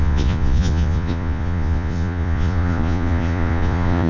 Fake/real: fake